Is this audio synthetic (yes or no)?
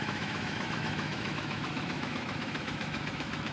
yes